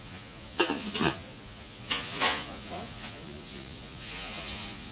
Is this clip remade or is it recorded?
remade